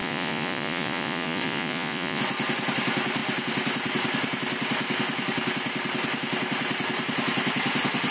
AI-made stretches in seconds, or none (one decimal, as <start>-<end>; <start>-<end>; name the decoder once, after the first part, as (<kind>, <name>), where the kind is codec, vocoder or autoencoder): 0.0-2.2 (vocoder, Vocos)